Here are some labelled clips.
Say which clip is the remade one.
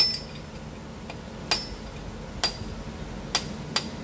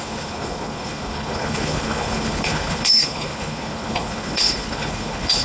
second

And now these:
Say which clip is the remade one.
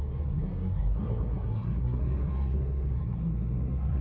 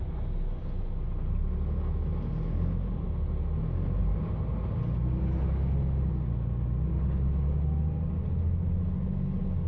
first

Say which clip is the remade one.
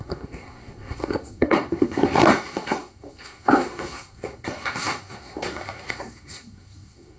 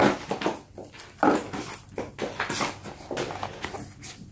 first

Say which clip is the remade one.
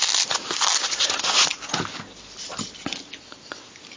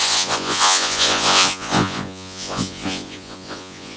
second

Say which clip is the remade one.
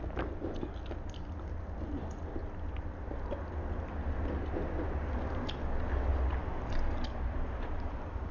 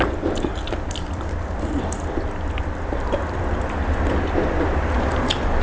second